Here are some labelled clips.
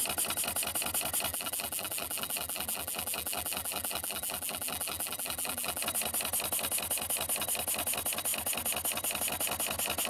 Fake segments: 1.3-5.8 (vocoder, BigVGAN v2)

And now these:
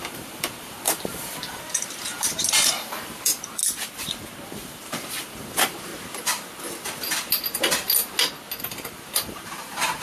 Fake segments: 0.0-3.6 (vocoder, BigVGAN v2); 4.8-5.9; 8.6-10.0